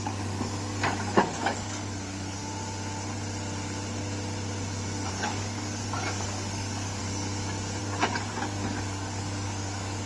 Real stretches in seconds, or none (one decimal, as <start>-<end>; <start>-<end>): 2.4-5.1; 7.0-7.8